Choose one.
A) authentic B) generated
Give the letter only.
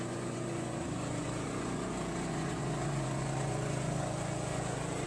B